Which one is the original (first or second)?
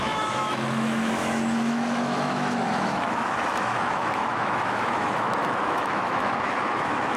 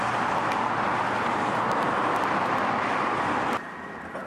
second